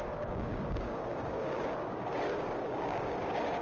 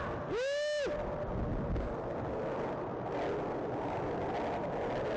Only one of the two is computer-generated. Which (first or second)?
first